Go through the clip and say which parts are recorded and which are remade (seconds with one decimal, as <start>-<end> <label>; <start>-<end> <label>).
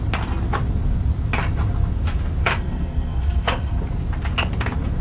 0.0-2.4 recorded; 2.4-3.8 remade; 3.8-5.0 recorded